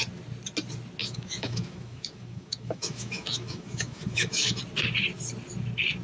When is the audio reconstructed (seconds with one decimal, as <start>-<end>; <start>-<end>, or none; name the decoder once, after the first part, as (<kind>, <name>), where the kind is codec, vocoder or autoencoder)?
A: 1.0-4.6 (autoencoder, DAC-VAE)

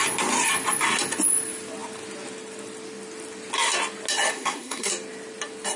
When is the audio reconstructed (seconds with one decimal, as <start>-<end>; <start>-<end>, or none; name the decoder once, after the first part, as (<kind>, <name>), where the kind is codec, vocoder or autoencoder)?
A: 4.3-4.9 (codec, SNAC)

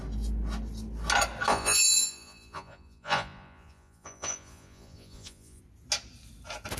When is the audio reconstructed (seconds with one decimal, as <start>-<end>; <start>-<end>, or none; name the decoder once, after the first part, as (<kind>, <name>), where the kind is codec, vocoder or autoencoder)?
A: 1.5-5.6 (vocoder, Vocos)

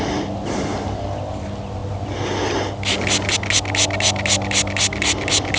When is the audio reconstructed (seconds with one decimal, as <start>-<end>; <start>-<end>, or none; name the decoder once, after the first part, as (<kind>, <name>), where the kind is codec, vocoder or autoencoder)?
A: none

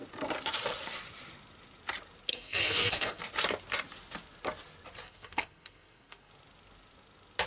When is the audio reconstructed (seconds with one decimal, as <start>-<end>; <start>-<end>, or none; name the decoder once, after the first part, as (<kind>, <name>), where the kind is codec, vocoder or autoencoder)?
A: 2.3-3.2 (codec, SNAC); 5.0-6.3

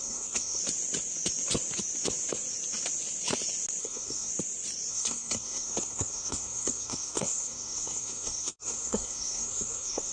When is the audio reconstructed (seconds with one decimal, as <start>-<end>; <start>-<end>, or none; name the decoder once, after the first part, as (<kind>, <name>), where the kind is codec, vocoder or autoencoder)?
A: 0.0-0.6 (codec, SNAC); 3.8-4.3; 4.9-10.1

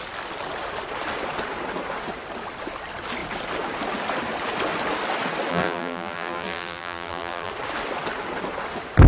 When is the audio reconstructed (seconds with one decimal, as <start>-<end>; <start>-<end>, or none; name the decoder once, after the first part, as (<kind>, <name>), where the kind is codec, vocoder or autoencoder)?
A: 5.5-7.5 (vocoder, BigVGAN v2)

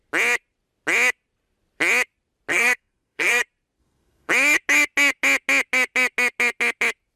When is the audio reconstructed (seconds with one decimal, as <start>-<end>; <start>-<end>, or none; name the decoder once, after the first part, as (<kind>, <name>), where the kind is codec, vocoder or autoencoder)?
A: 2.5-3.4 (codec, SNAC); 3.8-4.3